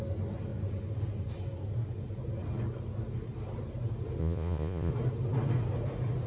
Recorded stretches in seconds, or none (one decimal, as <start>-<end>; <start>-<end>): 0.0-4.2; 4.9-6.3